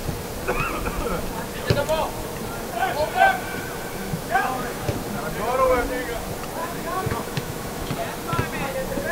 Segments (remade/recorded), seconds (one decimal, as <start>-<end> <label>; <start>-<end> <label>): 0.0-4.0 recorded; 4.0-5.0 remade; 5.0-6.6 recorded; 6.6-7.9 remade; 7.9-9.1 recorded